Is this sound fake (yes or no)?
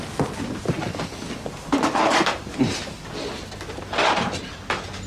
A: no